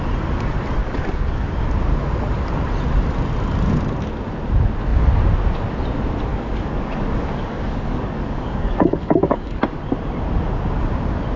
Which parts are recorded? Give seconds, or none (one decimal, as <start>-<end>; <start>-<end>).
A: 0.0-0.8; 1.5-6.3; 9.6-11.4